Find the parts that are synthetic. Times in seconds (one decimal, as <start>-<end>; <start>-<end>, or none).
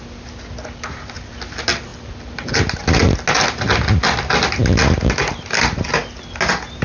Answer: none